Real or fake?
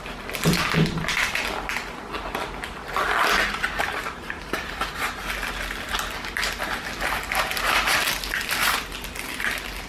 real